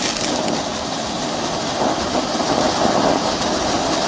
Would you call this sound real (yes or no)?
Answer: yes